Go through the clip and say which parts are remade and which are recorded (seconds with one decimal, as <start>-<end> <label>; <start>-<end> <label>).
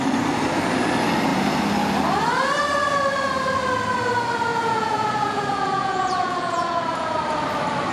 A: 0.0-4.5 recorded; 4.5-6.8 remade; 6.8-7.9 recorded